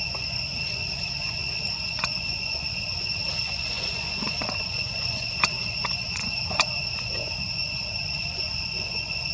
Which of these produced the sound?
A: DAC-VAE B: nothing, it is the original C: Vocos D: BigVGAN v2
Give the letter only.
C